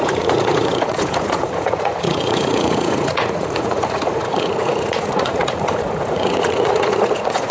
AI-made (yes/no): yes